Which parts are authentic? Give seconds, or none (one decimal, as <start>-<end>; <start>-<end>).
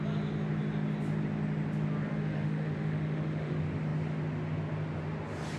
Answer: 0.0-2.1; 3.5-5.6